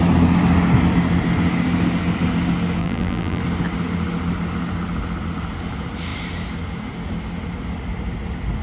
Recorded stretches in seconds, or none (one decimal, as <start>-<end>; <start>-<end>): 0.0-2.8; 3.4-8.6